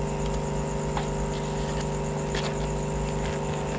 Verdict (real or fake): real